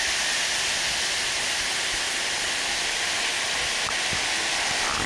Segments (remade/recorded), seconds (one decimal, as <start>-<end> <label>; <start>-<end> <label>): 0.0-5.1 recorded